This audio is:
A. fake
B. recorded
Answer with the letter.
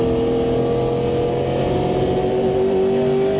B